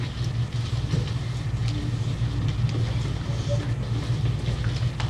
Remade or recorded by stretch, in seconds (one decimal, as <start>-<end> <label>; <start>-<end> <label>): 0.0-5.1 recorded